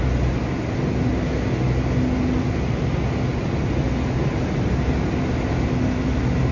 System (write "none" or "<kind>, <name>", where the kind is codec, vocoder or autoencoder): none